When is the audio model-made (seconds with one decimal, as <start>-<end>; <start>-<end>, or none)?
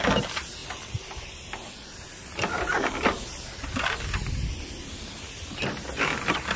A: none